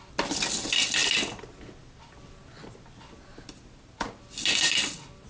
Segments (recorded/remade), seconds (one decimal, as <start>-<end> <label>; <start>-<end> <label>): 0.0-5.3 recorded